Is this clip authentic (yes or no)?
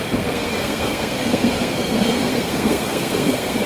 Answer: no